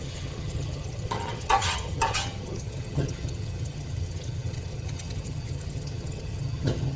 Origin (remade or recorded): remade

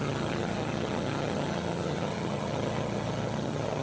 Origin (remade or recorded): remade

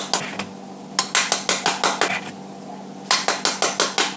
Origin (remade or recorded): recorded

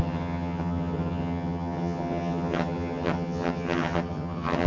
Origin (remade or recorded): remade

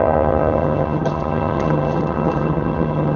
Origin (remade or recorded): remade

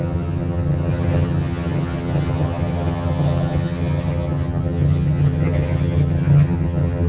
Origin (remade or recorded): remade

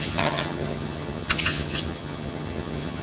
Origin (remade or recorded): remade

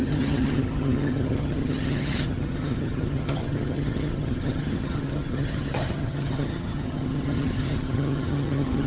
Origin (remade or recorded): remade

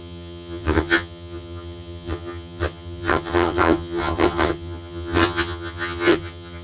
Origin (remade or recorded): remade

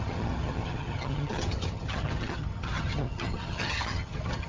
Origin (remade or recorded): remade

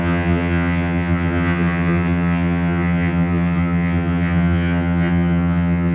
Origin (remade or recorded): remade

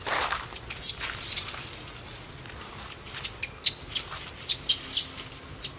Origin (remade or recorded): recorded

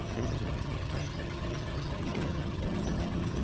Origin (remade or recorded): remade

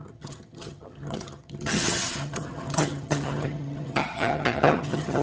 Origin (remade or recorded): remade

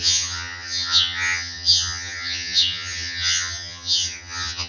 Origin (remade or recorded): remade